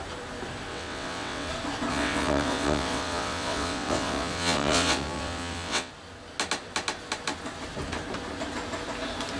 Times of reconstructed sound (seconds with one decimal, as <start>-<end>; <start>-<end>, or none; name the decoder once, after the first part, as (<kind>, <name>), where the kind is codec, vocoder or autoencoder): 0.7-1.5 (vocoder, WaveNeXt); 1.9-5.9